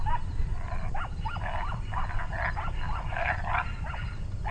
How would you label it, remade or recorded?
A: recorded